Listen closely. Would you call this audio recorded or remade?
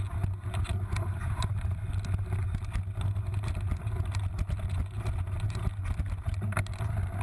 recorded